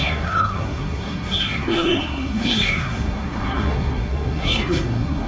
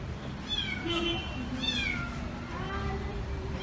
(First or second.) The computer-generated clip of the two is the first